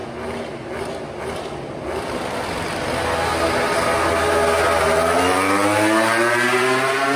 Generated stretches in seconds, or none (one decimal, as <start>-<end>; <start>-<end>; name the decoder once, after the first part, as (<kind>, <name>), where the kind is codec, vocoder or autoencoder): none